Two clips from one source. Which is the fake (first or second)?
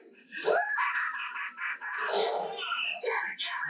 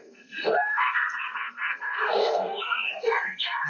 second